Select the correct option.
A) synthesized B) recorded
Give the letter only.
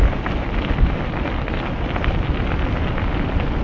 B